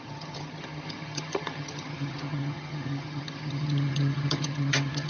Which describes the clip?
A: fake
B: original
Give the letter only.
A